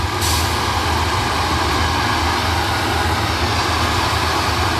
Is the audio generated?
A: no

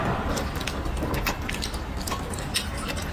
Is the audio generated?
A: yes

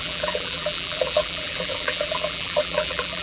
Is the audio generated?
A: yes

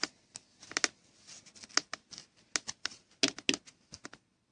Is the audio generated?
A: no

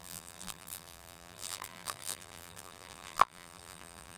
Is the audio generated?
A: yes